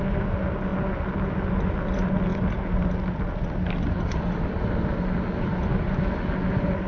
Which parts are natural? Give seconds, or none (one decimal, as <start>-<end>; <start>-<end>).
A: 0.0-2.3; 5.3-6.9